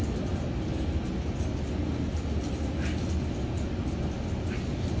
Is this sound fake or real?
real